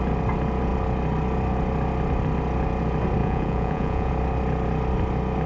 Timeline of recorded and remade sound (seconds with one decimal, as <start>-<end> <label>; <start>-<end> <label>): 0.0-3.2 recorded; 3.2-4.1 remade; 4.1-5.5 recorded